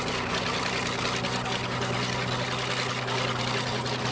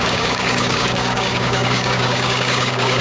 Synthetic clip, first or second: second